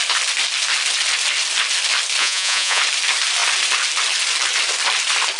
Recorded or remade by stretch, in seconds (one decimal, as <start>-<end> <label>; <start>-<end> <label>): 0.0-2.2 recorded; 2.2-2.8 remade; 2.8-5.4 recorded